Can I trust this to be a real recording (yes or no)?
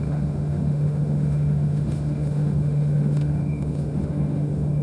no